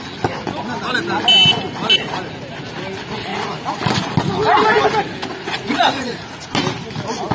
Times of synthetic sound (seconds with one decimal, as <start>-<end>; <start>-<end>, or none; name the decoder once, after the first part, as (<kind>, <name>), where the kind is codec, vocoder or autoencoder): 3.3-3.8 (vocoder, Vocos); 5.3-6.5